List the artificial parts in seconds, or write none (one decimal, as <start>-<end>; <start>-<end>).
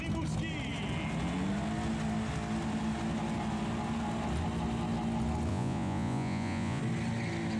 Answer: 5.5-6.8